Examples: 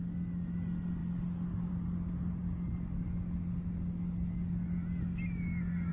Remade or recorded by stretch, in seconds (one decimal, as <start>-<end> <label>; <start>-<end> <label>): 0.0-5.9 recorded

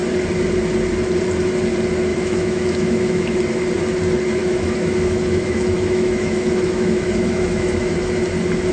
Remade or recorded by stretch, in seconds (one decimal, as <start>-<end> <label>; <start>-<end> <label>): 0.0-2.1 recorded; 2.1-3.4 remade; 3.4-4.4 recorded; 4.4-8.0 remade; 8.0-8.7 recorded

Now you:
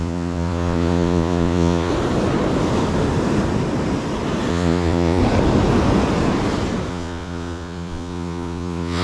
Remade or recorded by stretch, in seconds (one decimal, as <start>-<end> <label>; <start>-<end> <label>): 0.0-1.9 remade; 1.9-4.5 recorded; 4.5-5.2 remade; 5.2-6.9 recorded; 6.9-9.0 remade

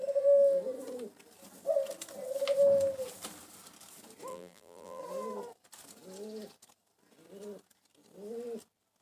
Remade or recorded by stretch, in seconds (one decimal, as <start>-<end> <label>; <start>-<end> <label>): 0.0-4.3 recorded; 4.3-5.0 remade; 5.0-9.0 recorded

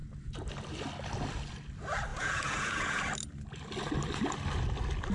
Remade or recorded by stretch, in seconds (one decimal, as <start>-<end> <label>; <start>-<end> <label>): 0.0-2.1 recorded; 2.1-3.0 remade; 3.0-5.1 recorded